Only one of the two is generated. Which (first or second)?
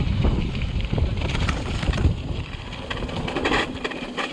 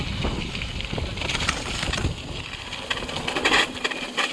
first